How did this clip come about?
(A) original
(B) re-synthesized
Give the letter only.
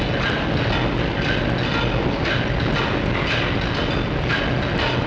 A